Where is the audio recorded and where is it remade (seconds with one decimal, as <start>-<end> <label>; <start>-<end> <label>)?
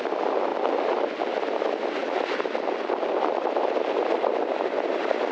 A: 0.0-0.5 recorded; 0.5-1.3 remade; 1.3-2.0 recorded; 2.0-5.3 remade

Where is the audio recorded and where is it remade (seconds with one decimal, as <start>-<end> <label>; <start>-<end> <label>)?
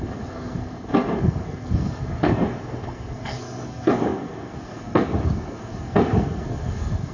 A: 0.0-7.1 remade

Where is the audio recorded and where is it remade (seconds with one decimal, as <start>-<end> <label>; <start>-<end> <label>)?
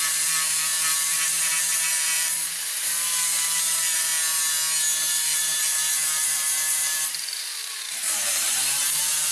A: 0.0-4.1 remade; 4.1-5.1 recorded; 5.1-9.3 remade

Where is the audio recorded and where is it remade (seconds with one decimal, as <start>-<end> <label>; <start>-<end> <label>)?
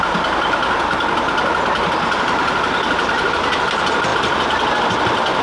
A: 0.0-5.4 recorded